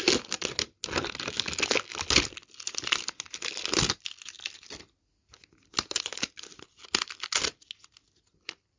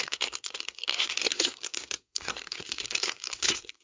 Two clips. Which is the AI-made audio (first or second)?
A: second